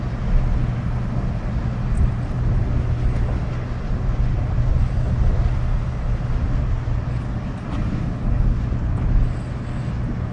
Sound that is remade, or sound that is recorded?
recorded